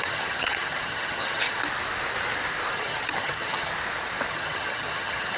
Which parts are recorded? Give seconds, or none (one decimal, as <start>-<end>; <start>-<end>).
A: 1.6-2.7; 3.7-4.3

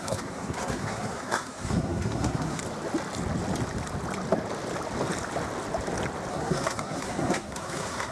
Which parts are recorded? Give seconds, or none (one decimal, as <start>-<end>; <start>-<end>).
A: 2.6-6.3